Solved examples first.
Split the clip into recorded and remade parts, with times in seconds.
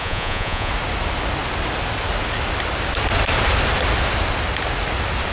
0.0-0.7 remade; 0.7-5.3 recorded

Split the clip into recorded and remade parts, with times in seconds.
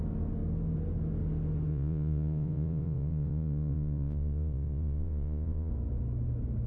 0.0-1.7 recorded; 1.7-5.7 remade; 5.7-6.7 recorded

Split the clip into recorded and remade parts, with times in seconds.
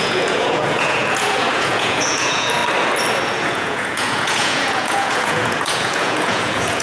0.0-2.6 remade; 2.6-3.2 recorded; 3.2-6.8 remade